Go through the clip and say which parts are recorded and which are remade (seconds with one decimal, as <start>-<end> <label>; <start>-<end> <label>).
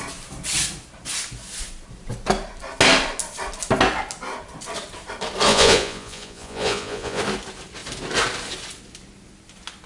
0.0-5.5 recorded; 5.5-7.2 remade; 7.2-9.9 recorded